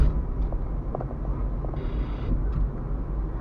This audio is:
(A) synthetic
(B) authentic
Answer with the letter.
B